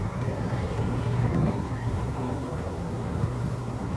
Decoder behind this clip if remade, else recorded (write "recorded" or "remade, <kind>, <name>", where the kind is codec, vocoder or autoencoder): remade, codec, SNAC